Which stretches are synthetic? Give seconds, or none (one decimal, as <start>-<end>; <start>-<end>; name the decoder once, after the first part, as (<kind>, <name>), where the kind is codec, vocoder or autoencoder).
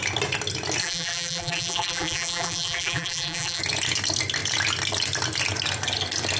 0.8-3.6 (vocoder, BigVGAN v2)